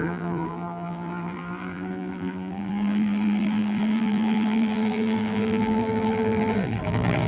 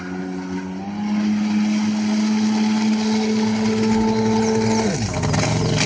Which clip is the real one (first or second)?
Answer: second